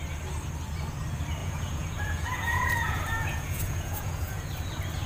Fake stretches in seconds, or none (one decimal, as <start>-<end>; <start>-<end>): 1.4-4.5